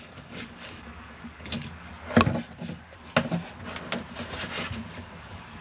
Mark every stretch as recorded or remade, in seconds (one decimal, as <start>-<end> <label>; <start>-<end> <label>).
0.0-1.9 remade; 1.9-4.9 recorded; 4.9-5.6 remade